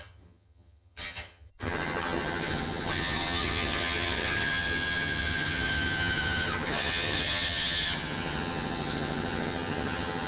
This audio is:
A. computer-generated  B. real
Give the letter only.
A